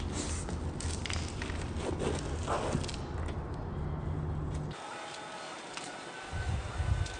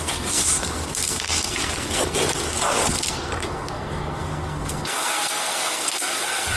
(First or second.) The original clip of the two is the first